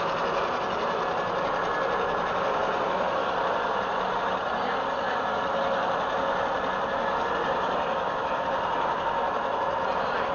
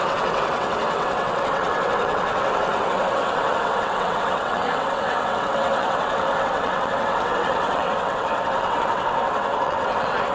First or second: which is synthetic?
second